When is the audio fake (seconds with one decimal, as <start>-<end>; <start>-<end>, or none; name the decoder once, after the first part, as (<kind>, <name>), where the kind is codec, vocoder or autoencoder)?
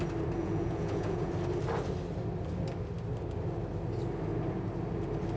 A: 0.4-1.3 (vocoder, Vocos)